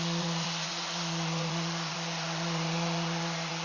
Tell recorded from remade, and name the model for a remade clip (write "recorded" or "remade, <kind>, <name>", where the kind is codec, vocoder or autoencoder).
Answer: remade, vocoder, Vocos